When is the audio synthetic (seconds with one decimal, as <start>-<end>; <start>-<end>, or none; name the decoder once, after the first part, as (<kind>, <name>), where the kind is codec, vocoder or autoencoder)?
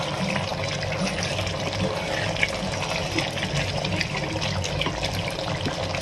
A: none